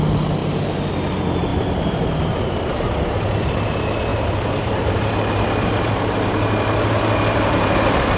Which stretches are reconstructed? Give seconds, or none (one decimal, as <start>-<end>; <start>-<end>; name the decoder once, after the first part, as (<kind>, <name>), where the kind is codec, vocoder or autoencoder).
0.4-1.1 (vocoder, BigVGAN v2); 1.5-2.4; 4.1-8.2